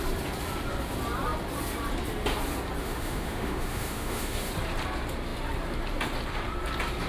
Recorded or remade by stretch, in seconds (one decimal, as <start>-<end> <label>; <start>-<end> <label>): 0.0-2.8 recorded; 2.8-4.5 remade; 4.5-7.1 recorded

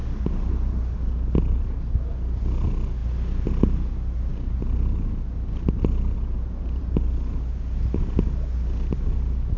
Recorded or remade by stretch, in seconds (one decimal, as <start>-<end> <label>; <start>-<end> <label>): 0.0-9.6 recorded

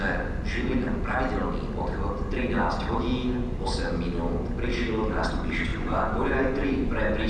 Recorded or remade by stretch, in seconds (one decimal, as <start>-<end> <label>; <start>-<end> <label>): 0.0-5.7 recorded; 5.7-7.3 remade

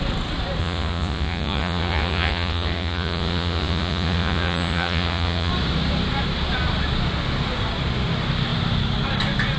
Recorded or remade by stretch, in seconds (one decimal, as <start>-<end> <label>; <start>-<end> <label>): 0.0-0.6 recorded; 0.6-5.5 remade; 5.5-9.6 recorded

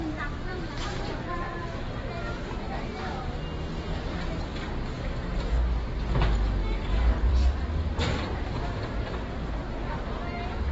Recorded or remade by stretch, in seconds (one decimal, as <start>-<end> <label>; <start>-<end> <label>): 0.0-6.6 recorded; 6.6-7.3 remade; 7.3-10.7 recorded

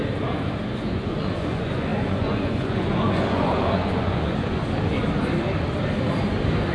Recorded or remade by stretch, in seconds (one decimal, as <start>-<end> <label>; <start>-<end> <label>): 0.0-0.7 recorded; 0.7-4.6 remade; 4.6-6.7 recorded

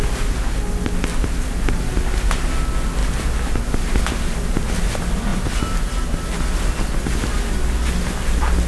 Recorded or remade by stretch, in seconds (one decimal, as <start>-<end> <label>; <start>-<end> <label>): 0.0-5.3 recorded; 5.3-6.4 remade; 6.4-8.7 recorded

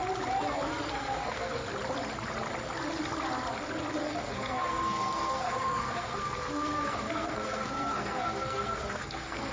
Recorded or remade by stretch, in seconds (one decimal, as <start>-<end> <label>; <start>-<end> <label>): 0.0-0.9 recorded; 0.9-1.6 remade; 1.6-3.9 recorded; 3.9-9.5 remade